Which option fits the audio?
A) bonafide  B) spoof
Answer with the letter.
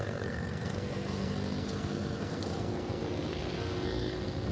B